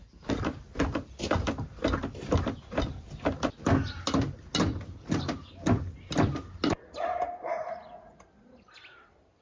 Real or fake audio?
real